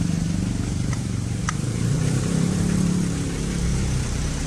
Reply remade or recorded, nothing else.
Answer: remade